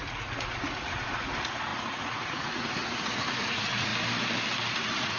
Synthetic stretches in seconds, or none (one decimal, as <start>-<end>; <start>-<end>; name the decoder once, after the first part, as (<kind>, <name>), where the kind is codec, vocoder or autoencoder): 0.0-3.9 (vocoder, Vocos); 4.7-5.2